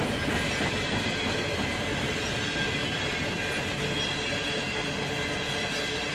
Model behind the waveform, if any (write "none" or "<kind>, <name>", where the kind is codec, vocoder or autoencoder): none